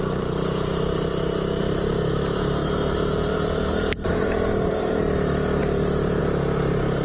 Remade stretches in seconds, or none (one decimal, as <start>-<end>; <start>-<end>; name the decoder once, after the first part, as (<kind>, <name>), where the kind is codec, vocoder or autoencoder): 1.6-5.0 (vocoder, BigVGAN v2); 5.6-6.2